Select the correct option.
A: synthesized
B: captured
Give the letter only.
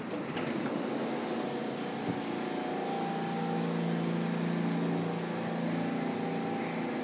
B